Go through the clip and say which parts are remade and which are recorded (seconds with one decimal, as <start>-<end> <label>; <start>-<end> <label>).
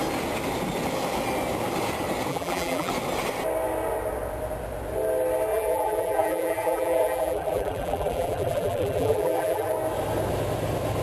0.0-2.3 recorded; 2.3-2.9 remade; 2.9-5.5 recorded; 5.5-9.7 remade; 9.7-11.0 recorded